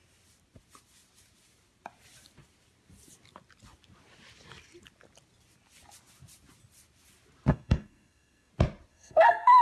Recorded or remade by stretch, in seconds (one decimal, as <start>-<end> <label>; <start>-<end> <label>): 0.0-7.5 recorded; 7.5-8.5 remade; 8.5-8.9 recorded; 8.9-9.6 remade